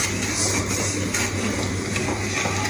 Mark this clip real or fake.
real